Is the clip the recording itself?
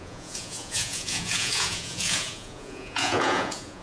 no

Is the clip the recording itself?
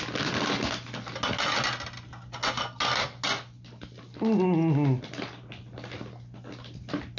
yes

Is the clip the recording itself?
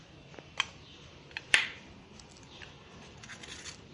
no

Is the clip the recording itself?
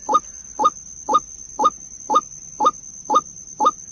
yes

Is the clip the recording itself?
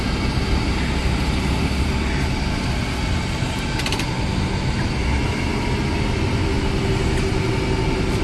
yes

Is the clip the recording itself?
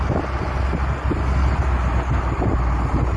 yes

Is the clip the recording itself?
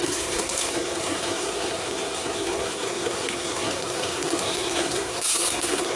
no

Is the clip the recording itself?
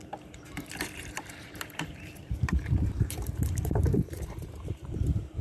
no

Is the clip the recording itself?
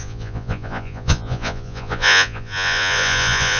no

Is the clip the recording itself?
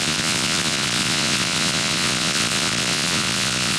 no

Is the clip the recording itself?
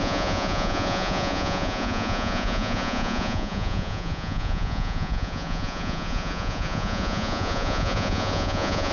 no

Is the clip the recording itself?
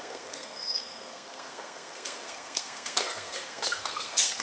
no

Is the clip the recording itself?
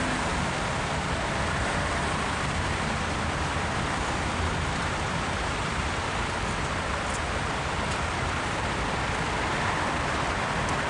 yes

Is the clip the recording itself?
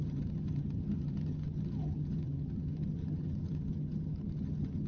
no